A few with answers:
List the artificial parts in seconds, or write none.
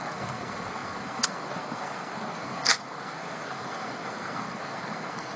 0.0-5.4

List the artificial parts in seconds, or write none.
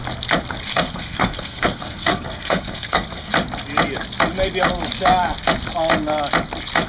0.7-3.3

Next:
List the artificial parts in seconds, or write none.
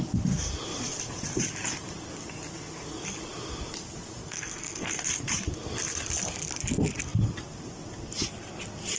4.2-5.0